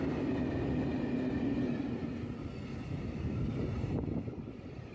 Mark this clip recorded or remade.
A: recorded